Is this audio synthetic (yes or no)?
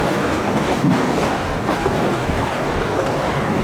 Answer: yes